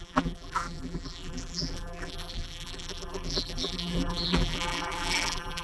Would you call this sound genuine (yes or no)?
no